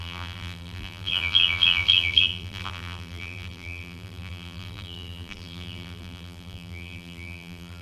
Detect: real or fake fake